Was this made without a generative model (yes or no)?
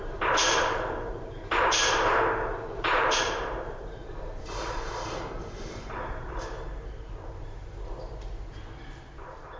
no